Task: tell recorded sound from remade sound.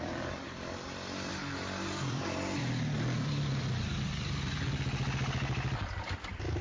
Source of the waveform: remade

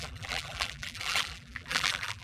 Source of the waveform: remade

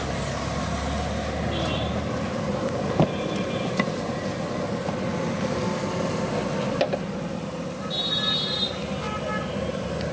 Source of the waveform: recorded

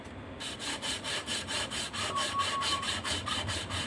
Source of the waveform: remade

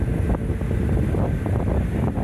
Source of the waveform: recorded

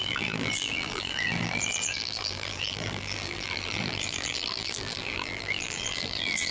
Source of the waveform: remade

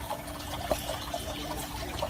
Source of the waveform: recorded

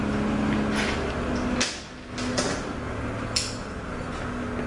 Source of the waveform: recorded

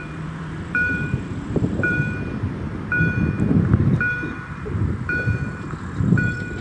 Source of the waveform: remade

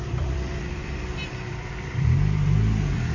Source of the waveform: remade